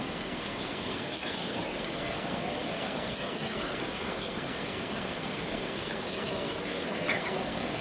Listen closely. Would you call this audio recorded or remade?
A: remade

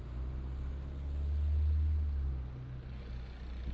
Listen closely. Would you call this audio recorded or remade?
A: recorded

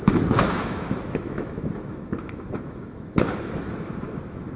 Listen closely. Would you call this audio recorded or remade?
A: remade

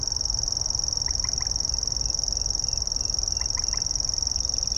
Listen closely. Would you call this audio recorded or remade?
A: recorded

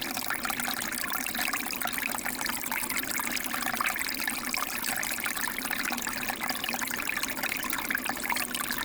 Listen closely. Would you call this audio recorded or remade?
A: remade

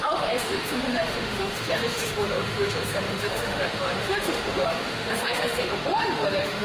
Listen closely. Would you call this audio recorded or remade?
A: remade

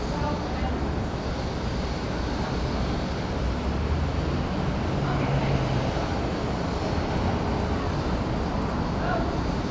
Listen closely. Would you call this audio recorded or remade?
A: recorded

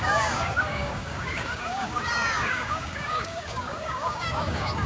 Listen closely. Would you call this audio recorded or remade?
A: remade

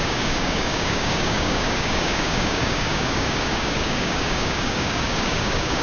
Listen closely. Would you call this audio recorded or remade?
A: remade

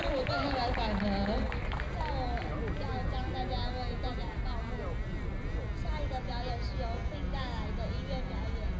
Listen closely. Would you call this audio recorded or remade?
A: recorded